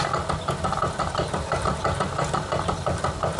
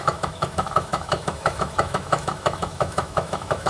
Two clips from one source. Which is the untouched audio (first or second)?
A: first